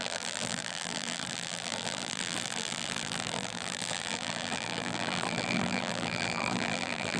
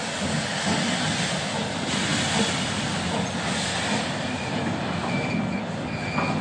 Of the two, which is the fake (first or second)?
first